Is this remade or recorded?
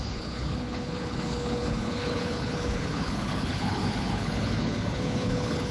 remade